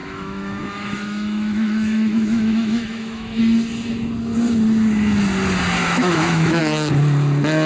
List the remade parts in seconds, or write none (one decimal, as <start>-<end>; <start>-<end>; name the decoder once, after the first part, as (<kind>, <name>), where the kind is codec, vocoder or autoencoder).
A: 0.0-3.4 (autoencoder, DAC-VAE); 5.8-6.6